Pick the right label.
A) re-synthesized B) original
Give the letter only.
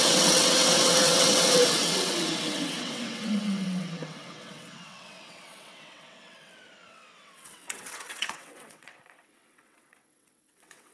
A